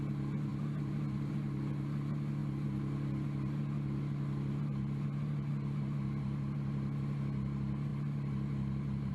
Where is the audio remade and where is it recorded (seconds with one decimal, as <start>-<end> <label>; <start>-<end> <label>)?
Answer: 0.0-9.1 recorded